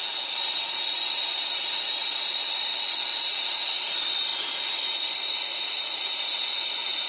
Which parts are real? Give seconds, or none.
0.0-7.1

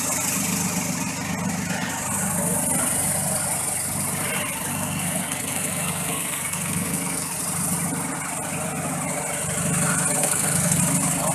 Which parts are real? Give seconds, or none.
0.0-4.7; 7.3-10.2; 10.8-11.3